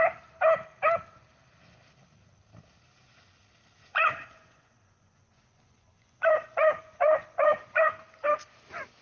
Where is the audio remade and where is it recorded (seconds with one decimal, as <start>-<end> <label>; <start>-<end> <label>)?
0.0-3.8 recorded; 3.8-7.9 remade; 7.9-9.0 recorded